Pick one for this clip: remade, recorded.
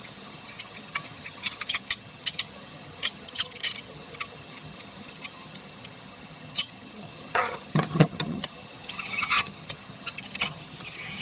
remade